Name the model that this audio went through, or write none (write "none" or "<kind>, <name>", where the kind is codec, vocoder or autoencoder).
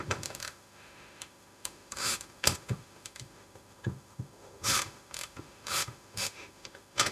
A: autoencoder, DAC-VAE